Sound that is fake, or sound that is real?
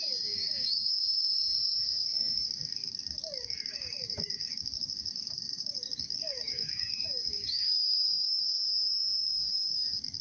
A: fake